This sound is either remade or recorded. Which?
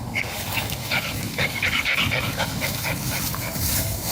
remade